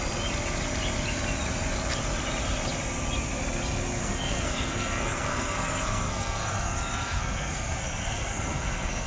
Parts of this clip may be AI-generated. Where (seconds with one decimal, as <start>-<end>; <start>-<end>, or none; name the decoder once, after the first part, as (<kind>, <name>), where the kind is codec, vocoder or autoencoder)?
4.0-9.1 (codec, SNAC)